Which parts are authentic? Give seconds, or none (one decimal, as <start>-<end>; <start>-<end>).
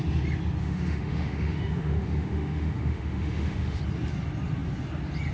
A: 0.0-0.6; 3.8-5.3